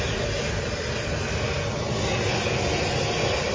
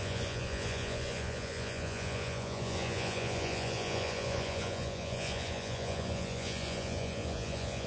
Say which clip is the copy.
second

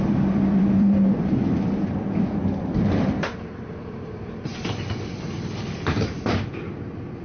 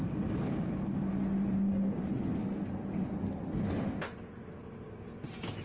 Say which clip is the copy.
first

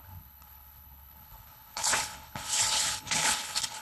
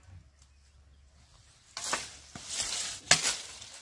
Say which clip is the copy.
first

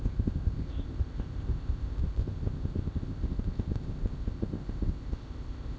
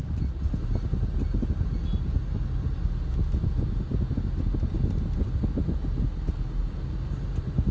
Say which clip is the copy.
first